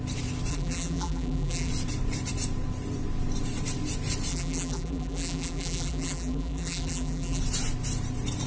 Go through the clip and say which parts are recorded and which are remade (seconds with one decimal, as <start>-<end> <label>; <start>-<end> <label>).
0.0-0.5 recorded; 0.5-1.7 remade; 1.7-4.3 recorded; 4.3-7.4 remade; 7.4-8.5 recorded